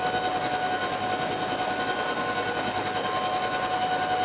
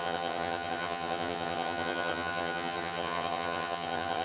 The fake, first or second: second